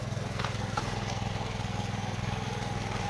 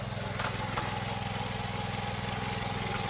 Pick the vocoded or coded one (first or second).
first